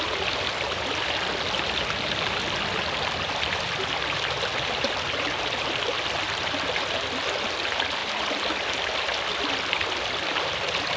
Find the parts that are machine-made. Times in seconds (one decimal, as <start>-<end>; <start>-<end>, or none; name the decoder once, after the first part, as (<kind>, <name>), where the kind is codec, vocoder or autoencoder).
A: none